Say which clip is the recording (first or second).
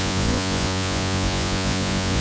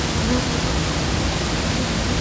second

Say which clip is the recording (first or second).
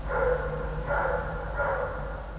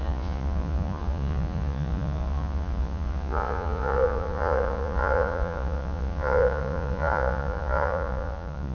first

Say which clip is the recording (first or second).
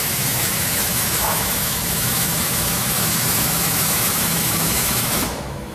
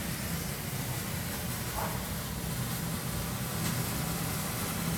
second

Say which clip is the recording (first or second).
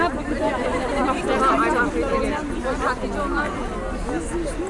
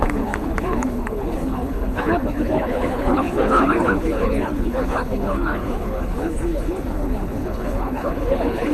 first